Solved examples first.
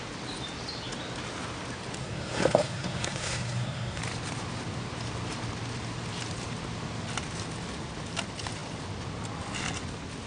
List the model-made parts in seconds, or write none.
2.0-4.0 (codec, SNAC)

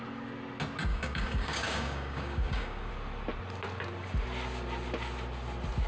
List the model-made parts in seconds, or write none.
0.9-2.9 (codec, DAC)

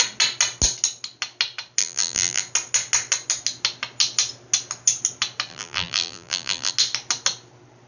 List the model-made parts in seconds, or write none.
1.8-2.4 (vocoder, BigVGAN v2); 5.5-6.7

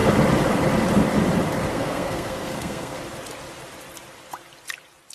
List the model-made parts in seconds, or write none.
1.7-3.0 (codec, SNAC)

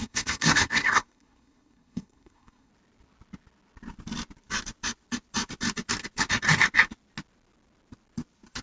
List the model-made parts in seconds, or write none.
0.0-2.7 (codec, SNAC)

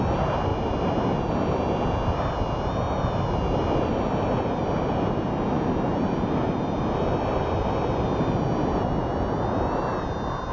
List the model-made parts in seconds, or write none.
none

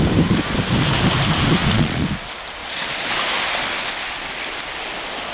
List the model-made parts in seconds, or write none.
1.6-2.1 (vocoder, Vocos); 2.6-3.1

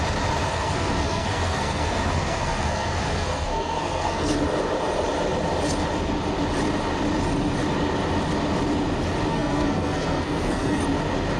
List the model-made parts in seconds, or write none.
0.5-4.4 (codec, SNAC); 9.3-10.8